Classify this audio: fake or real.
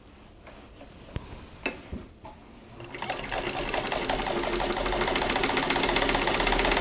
real